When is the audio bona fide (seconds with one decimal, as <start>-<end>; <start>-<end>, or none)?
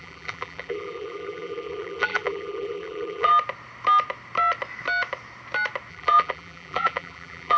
3.3-5.9